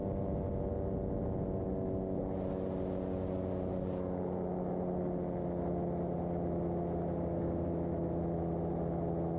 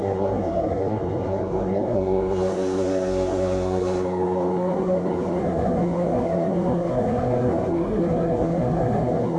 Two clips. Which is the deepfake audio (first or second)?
second